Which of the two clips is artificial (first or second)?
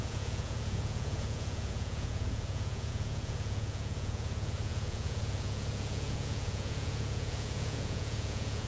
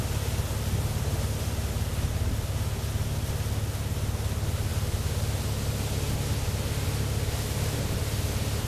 first